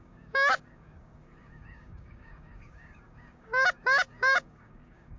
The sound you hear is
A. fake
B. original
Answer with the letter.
A